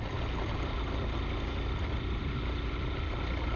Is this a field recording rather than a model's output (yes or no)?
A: yes